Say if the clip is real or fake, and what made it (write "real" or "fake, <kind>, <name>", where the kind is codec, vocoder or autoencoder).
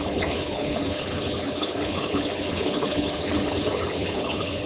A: fake, codec, HILCodec